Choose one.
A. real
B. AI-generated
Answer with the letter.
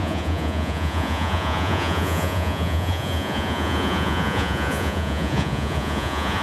B